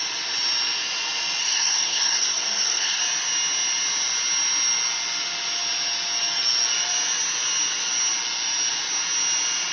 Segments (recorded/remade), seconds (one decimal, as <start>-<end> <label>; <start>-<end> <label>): 0.0-1.4 recorded; 1.4-3.0 remade; 3.0-9.7 recorded

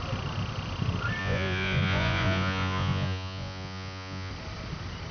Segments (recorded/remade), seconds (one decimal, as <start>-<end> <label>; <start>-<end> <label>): 0.0-1.2 recorded; 1.2-4.3 remade; 4.3-5.1 recorded

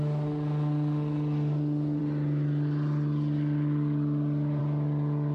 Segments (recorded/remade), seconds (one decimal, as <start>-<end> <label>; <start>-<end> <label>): 0.0-5.3 recorded

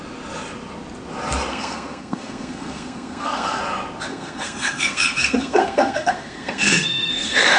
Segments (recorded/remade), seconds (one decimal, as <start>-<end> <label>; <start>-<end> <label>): 0.0-1.5 recorded; 1.5-3.6 remade; 3.6-4.1 recorded; 4.1-7.6 remade

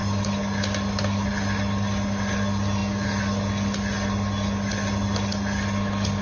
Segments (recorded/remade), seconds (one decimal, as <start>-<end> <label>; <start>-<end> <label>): 0.0-6.2 recorded

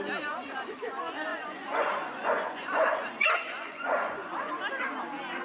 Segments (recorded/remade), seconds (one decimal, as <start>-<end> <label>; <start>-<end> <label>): 0.0-1.3 recorded; 1.3-4.5 remade; 4.5-5.4 recorded